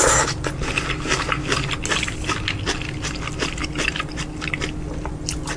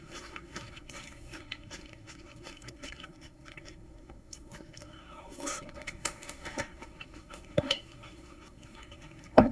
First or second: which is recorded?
first